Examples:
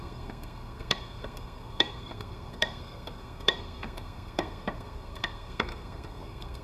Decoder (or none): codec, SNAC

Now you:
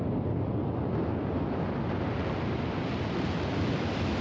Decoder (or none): none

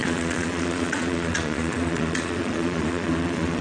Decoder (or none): vocoder, Vocos